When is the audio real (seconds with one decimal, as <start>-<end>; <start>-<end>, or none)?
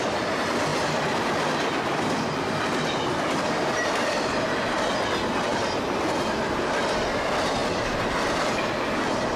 0.0-9.4